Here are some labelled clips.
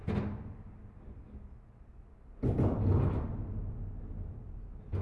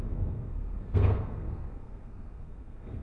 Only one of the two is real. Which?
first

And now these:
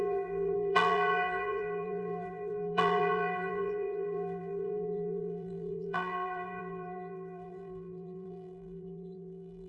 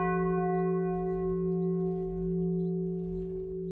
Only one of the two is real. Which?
second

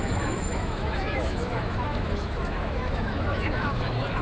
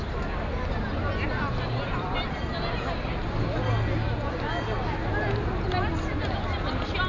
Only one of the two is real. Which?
second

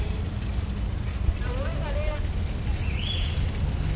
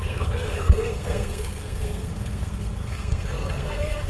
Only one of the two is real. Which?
first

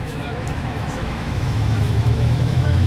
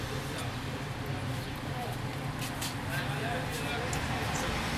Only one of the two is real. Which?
second